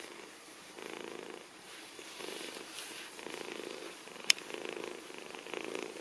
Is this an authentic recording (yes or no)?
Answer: no